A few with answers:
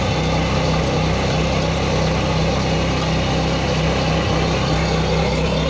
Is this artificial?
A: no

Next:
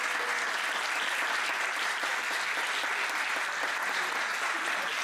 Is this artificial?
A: no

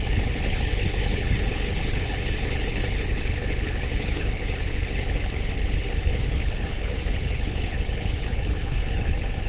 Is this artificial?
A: yes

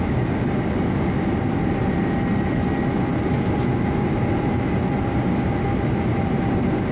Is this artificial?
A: no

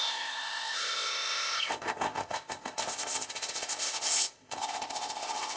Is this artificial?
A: yes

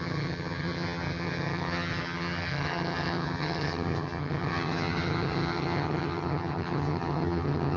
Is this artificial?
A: yes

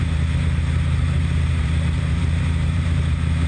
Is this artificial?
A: yes